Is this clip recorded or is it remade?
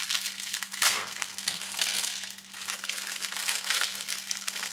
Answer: remade